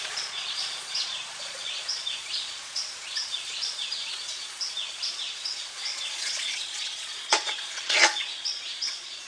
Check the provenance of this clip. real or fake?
fake